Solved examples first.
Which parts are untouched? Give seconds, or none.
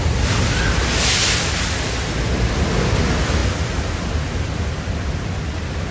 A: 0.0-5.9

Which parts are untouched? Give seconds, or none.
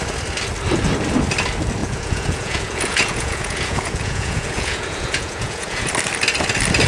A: 0.0-1.8; 5.9-6.9